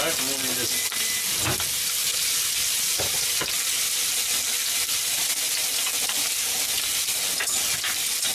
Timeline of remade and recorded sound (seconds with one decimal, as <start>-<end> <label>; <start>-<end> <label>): 0.0-2.0 recorded; 2.0-3.6 remade; 3.6-8.3 recorded